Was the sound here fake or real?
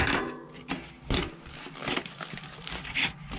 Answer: real